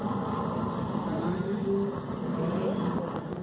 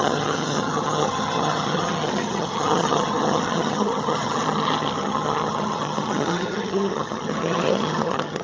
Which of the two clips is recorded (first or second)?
first